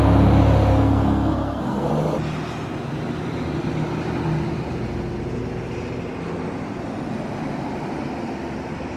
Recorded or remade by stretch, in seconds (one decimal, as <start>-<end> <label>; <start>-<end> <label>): 0.0-0.7 recorded; 0.7-1.9 remade; 1.9-9.0 recorded